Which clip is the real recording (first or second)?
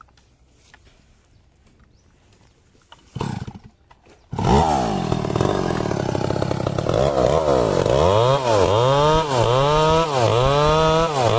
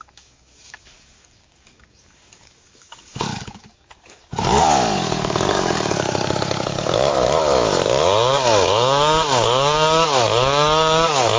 first